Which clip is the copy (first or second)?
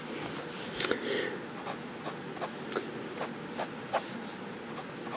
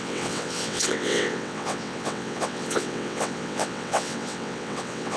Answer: second